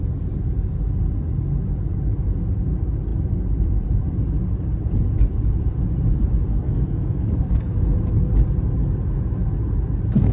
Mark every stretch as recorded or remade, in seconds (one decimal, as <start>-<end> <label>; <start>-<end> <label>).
0.0-6.5 recorded; 6.5-7.7 remade; 7.7-10.3 recorded